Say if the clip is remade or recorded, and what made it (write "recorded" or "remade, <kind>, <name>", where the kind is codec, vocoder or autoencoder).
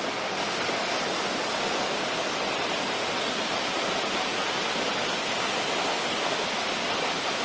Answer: recorded